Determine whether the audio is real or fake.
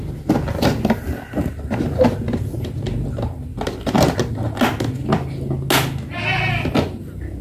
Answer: real